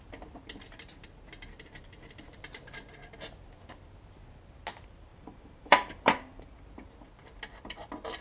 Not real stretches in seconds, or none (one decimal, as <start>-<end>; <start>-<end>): 5.1-6.6